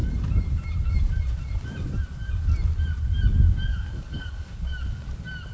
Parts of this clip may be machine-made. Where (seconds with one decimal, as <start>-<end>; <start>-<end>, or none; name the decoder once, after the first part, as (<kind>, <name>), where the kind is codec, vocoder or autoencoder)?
3.7-4.7 (codec, DAC)